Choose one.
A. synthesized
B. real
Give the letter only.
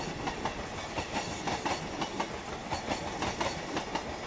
B